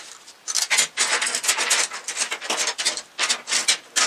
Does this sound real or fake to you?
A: real